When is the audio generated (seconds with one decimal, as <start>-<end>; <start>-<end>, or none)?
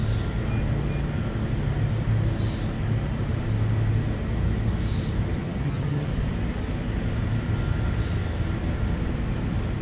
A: 5.4-6.1